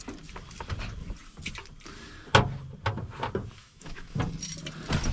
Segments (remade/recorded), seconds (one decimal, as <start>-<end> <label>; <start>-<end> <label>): 0.0-3.6 recorded; 3.6-4.2 remade; 4.2-5.1 recorded